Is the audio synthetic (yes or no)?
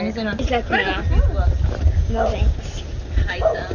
no